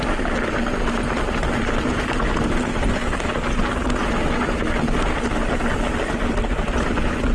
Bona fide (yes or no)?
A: yes